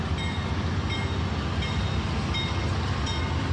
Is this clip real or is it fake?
real